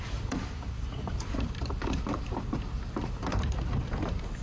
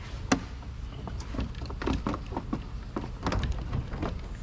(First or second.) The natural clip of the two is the second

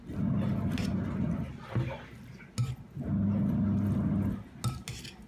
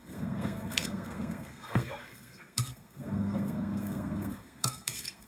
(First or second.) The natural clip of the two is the first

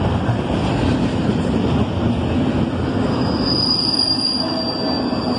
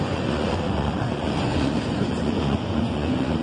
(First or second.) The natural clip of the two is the first